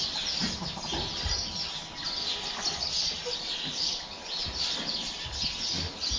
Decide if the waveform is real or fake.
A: real